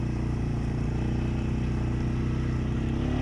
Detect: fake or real real